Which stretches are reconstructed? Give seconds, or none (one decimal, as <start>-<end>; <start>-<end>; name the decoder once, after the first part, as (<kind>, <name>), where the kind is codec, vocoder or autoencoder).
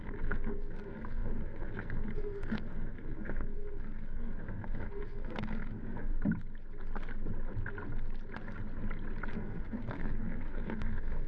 0.0-6.1 (codec, SNAC); 9.3-11.3